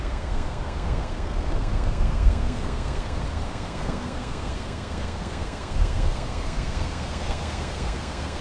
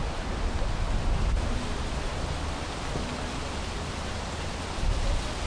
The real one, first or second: second